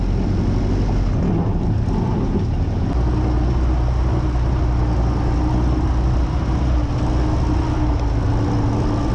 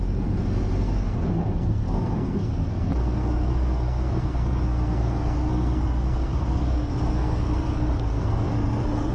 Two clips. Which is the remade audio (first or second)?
second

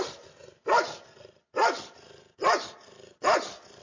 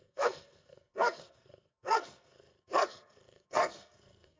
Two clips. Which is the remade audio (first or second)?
second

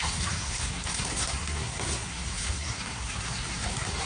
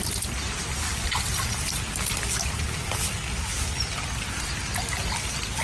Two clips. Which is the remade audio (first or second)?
first